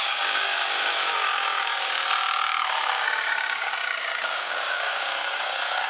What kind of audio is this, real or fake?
fake